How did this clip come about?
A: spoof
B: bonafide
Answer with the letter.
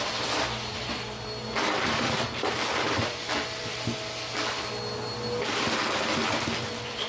B